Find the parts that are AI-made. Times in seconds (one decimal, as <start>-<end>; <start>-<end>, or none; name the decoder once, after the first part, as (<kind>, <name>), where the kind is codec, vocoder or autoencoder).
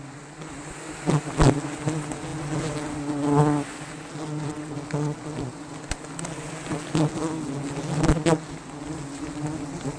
none